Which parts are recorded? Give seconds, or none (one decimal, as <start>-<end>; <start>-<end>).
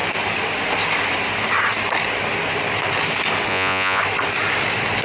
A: 0.0-3.5; 4.0-5.0